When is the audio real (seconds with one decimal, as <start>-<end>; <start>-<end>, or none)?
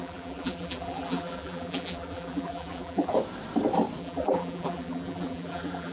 3.1-4.0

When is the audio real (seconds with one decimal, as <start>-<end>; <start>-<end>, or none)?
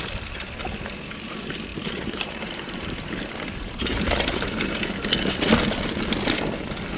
0.0-1.7; 3.3-3.9; 4.6-7.0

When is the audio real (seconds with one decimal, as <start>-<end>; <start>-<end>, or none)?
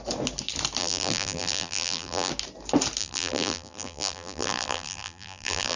0.0-0.8; 2.3-3.0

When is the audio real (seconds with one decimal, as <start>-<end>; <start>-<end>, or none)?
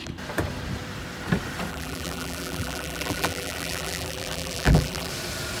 0.0-1.7; 5.1-5.6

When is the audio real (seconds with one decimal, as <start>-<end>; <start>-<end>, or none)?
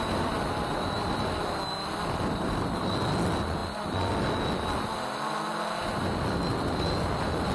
0.0-3.6; 4.1-7.5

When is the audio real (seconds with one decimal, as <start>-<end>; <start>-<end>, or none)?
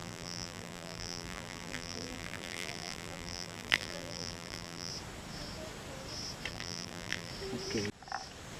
4.9-6.5; 7.3-8.6